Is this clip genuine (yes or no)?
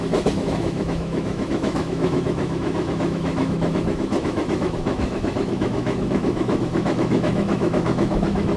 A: no